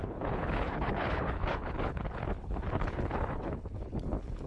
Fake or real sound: fake